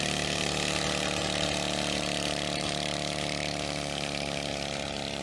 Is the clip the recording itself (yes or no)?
no